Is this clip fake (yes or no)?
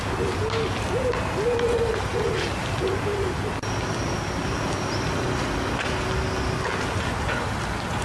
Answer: no